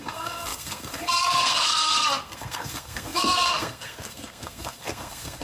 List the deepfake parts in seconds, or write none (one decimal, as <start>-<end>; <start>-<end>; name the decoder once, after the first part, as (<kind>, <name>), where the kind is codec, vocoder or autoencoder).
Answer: 0.0-5.4 (codec, SNAC)

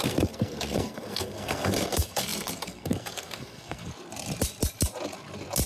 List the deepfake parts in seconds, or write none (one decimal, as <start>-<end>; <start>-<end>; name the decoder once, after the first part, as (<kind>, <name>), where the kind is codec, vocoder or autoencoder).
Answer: 0.0-3.9 (codec, SNAC)

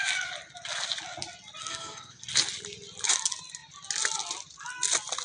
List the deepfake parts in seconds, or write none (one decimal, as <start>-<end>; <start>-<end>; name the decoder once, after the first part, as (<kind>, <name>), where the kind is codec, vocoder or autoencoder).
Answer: 1.6-2.2 (codec, SNAC)